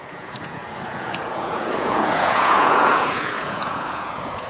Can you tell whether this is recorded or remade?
remade